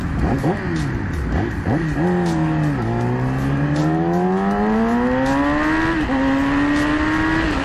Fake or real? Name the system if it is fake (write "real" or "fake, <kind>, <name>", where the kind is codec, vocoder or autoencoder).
real